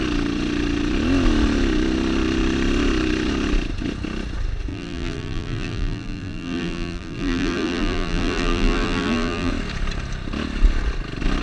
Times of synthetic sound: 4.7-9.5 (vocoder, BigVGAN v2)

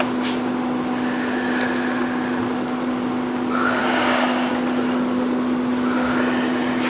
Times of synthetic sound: 3.8-4.5 (codec, DAC)

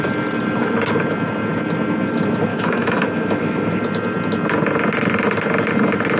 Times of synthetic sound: 2.5-3.8 (autoencoder, DAC-VAE)

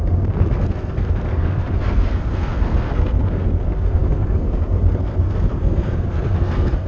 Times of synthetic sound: 0.0-6.9 (codec, SNAC)

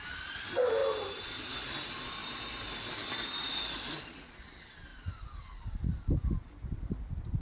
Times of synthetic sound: 0.8-1.7 (vocoder, BigVGAN v2); 4.9-5.4